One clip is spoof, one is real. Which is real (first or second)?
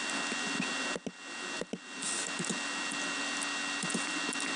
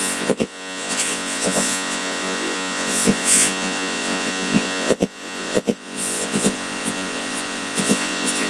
first